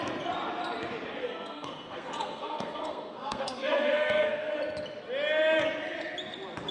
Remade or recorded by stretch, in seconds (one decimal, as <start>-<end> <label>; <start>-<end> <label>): 0.0-1.2 recorded; 1.2-4.5 remade; 4.5-6.7 recorded